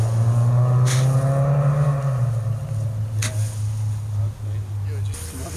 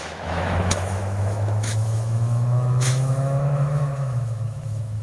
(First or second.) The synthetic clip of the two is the second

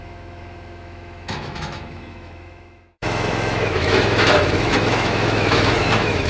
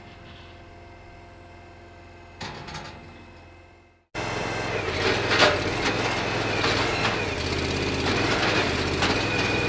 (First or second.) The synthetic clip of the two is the first